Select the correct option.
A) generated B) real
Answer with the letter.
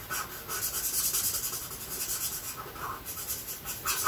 B